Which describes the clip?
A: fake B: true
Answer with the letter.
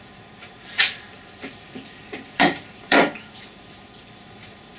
A